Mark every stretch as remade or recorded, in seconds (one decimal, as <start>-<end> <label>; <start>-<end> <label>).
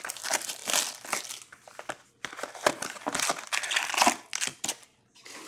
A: 0.0-5.5 recorded